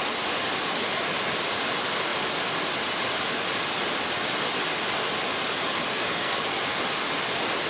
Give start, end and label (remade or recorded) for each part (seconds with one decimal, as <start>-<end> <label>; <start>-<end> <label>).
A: 0.0-5.9 recorded; 5.9-6.6 remade; 6.6-7.7 recorded